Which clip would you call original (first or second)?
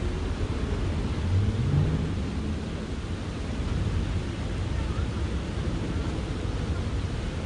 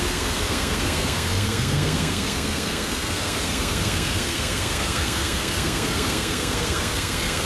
first